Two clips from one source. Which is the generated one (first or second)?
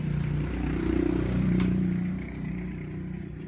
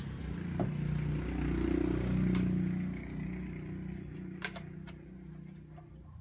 first